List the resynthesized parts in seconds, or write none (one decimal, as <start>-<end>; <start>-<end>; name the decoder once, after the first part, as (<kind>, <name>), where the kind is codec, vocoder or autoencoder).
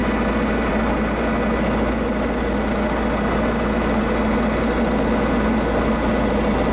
none